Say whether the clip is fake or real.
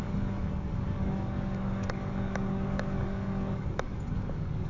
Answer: fake